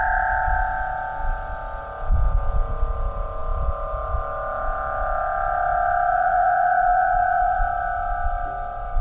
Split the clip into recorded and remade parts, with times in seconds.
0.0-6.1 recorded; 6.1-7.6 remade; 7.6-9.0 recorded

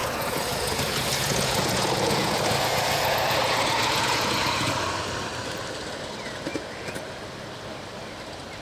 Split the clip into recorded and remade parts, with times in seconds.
0.0-4.8 remade; 4.8-6.5 recorded; 6.5-7.0 remade; 7.0-8.6 recorded

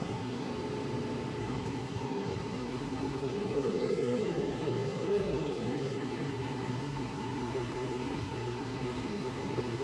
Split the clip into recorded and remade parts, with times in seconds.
0.0-0.5 remade; 0.5-1.4 recorded; 1.4-9.8 remade